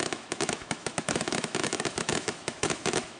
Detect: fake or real fake